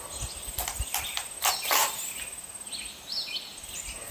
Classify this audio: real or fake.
real